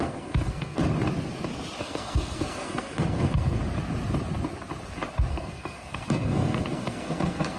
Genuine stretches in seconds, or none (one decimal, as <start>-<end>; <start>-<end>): 0.8-1.8; 3.6-5.3